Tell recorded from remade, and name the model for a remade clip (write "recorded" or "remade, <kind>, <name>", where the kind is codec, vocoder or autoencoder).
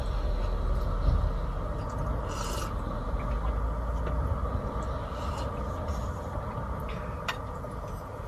recorded